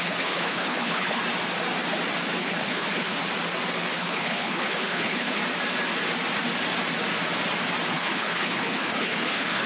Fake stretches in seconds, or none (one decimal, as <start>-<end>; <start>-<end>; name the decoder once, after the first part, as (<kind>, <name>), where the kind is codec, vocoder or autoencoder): 0.0-1.2 (codec, HILCodec); 2.4-3.2; 3.9-5.4; 7.9-9.7